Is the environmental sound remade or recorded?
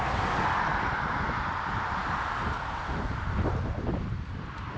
recorded